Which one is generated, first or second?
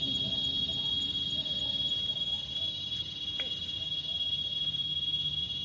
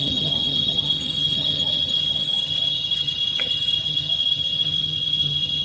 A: second